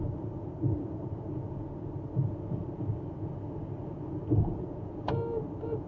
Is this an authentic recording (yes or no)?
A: yes